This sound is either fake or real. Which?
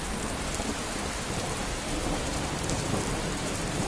fake